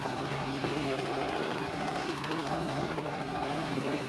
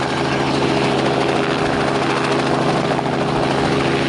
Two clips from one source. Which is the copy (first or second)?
first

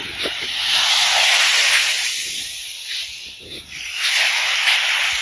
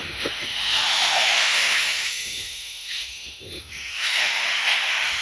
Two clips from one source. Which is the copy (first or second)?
second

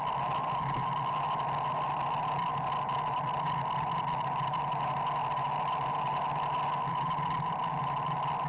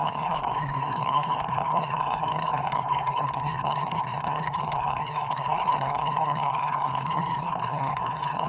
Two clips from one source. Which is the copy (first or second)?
second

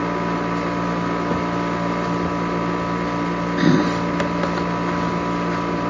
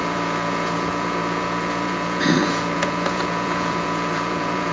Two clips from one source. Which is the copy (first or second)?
second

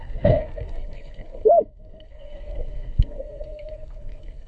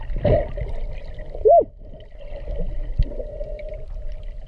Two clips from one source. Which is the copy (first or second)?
first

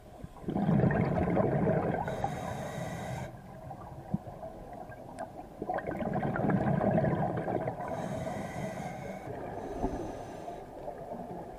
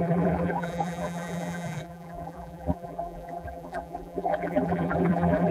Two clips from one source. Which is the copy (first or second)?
second